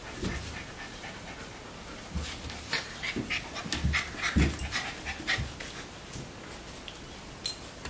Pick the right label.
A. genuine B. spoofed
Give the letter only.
A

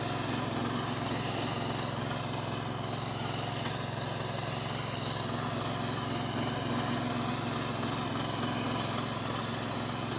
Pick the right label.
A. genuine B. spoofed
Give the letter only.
A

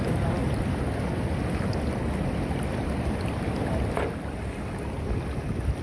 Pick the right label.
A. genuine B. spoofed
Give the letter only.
A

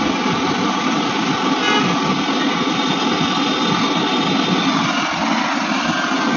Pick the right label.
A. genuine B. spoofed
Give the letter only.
A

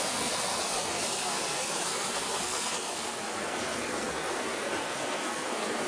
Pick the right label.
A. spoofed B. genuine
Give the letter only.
A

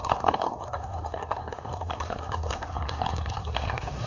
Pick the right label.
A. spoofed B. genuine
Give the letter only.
A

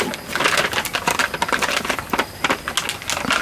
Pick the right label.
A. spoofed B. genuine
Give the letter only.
B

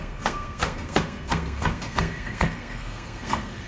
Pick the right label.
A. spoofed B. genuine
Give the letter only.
A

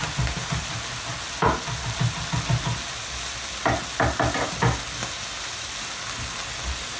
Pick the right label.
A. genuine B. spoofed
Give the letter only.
A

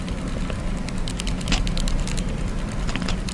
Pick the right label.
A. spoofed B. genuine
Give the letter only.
B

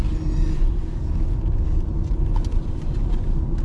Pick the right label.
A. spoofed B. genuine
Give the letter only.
B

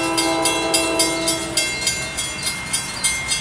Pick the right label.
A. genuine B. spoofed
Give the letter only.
A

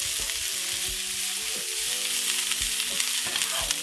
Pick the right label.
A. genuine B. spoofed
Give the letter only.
A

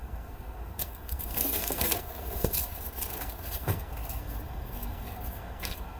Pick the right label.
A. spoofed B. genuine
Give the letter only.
A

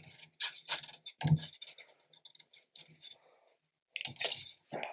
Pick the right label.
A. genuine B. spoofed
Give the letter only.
A